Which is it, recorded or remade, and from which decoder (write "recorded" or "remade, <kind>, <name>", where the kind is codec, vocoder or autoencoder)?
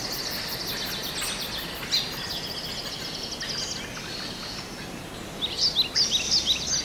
recorded